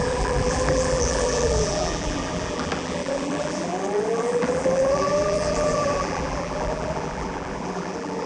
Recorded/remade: remade